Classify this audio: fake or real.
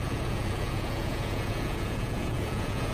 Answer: fake